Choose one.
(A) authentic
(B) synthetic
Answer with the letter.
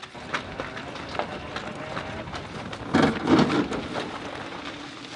A